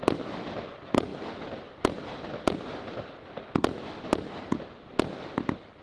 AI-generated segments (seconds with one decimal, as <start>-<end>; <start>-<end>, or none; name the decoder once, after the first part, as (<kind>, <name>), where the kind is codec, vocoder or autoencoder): none